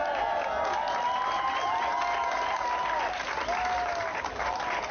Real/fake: real